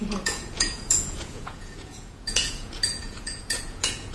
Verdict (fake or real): fake